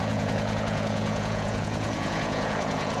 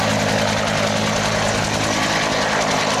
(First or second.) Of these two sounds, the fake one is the first